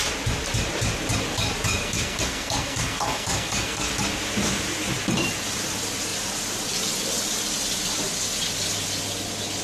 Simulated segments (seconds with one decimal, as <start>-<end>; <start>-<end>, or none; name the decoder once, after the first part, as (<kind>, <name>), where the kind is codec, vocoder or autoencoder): 1.8-3.9 (codec, SNAC)

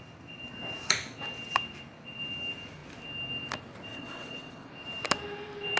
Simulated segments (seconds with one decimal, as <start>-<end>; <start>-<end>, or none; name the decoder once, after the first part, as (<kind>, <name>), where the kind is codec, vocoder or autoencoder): 3.9-4.7 (vocoder, WaveNeXt)

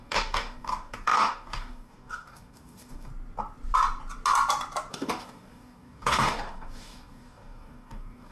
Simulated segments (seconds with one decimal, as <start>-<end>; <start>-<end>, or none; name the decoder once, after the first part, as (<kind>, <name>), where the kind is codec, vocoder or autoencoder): 0.0-3.1 (codec, DAC); 4.9-8.3

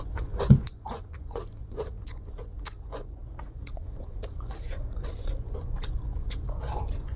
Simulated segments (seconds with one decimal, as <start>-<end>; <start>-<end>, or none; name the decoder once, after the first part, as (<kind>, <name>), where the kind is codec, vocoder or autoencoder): 0.0-7.2 (vocoder, Vocos)